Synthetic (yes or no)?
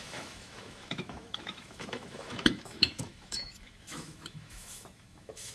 yes